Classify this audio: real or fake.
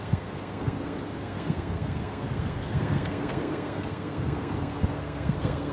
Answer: fake